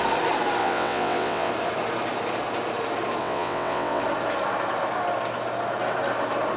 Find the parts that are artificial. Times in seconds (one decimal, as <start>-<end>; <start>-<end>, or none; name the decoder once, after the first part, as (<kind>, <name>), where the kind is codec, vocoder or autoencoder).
0.6-1.5 (vocoder, WaveNeXt); 3.2-4.0